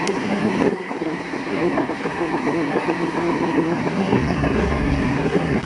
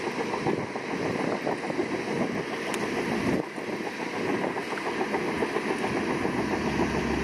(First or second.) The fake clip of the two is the first